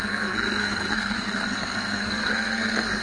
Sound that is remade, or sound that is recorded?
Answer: remade